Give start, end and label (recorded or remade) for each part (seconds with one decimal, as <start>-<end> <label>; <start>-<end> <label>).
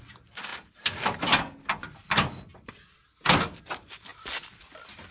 0.0-5.1 recorded